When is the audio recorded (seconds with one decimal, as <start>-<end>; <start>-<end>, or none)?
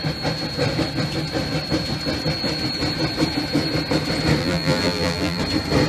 0.0-4.4; 5.4-5.9